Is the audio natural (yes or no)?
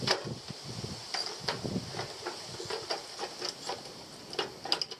yes